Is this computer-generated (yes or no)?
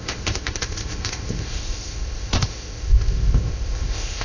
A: yes